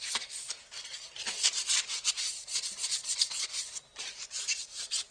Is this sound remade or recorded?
remade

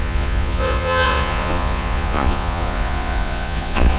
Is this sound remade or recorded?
remade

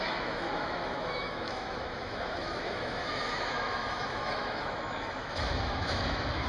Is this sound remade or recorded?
remade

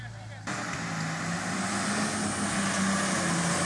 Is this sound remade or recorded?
recorded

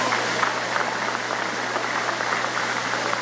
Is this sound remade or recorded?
recorded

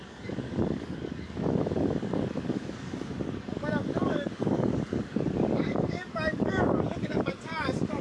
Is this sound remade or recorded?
remade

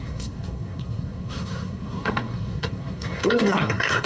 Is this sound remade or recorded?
remade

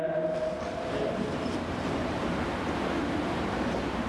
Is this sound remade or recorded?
remade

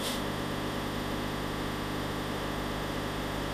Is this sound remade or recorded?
remade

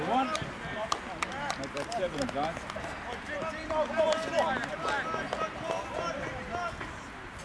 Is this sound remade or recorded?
recorded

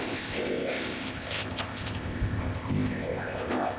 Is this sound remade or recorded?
remade